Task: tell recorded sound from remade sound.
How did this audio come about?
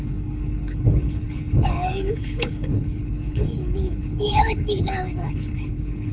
remade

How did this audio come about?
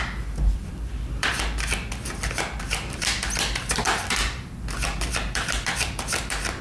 remade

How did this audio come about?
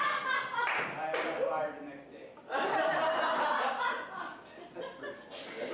recorded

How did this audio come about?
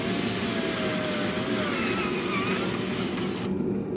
recorded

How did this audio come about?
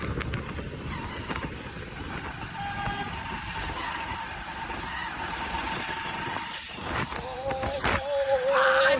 recorded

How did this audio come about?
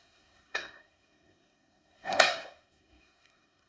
remade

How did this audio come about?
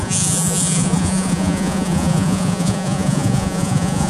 remade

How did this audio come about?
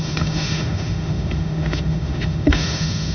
remade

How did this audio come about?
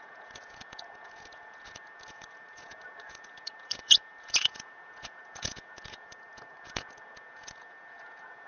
remade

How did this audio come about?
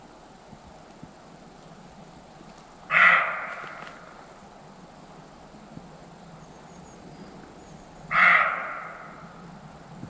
recorded